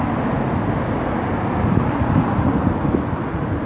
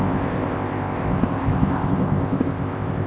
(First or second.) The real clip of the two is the first